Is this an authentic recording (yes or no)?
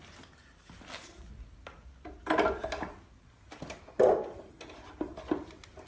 yes